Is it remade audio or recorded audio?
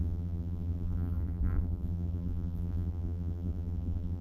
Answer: remade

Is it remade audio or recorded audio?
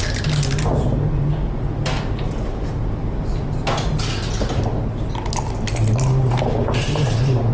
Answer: recorded